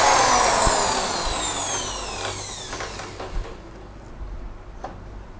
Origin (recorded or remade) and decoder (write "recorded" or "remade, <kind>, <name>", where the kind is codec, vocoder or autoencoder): recorded